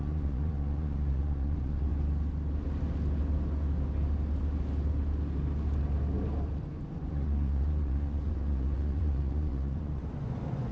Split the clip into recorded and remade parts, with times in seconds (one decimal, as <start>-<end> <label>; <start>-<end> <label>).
0.0-1.9 remade; 1.9-7.0 recorded; 7.0-10.7 remade